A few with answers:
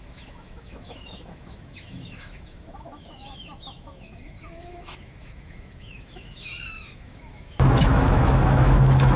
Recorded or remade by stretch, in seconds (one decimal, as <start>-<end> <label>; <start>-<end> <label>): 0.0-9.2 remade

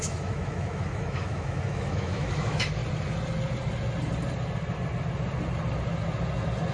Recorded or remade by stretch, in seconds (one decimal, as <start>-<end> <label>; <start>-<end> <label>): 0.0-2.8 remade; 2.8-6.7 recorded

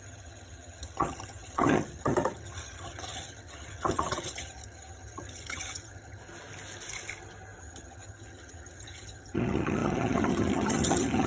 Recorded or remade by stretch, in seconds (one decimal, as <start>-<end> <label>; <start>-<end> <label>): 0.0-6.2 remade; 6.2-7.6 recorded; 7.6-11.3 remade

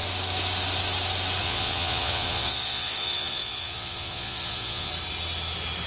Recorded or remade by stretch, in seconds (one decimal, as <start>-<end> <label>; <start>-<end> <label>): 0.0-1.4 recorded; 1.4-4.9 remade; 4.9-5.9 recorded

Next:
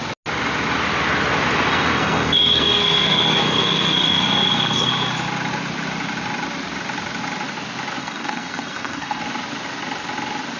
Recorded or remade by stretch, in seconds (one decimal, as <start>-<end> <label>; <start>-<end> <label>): 0.0-1.7 recorded; 1.7-4.9 remade; 4.9-8.0 recorded; 8.0-9.2 remade; 9.2-10.6 recorded